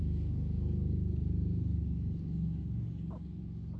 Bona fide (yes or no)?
no